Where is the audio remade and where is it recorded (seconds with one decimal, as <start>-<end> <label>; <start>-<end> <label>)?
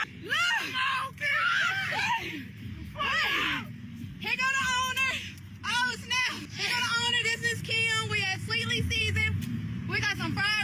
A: 0.0-7.8 remade; 7.8-9.0 recorded; 9.0-10.6 remade